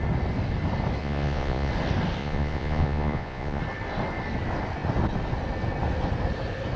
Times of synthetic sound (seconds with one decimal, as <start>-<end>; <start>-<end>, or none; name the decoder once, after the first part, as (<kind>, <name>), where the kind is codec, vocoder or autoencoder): 1.0-1.7 (vocoder, Vocos); 2.2-3.6